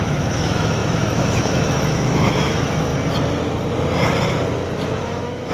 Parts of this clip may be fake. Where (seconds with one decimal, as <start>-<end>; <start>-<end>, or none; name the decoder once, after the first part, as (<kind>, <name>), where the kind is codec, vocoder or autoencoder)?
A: 0.0-2.9 (autoencoder, DAC-VAE); 5.0-5.5